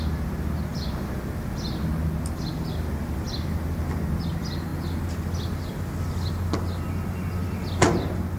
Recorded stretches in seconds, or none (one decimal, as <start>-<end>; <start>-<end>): 0.0-8.4